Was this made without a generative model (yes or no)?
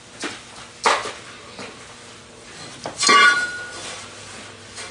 yes